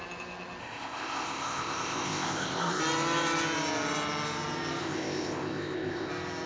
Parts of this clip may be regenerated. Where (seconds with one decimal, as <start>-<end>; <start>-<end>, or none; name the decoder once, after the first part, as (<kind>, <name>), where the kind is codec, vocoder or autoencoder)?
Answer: 0.6-2.8 (codec, ZipCodec); 4.8-6.1